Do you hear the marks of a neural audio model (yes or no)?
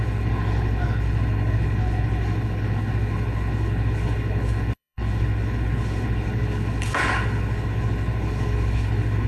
yes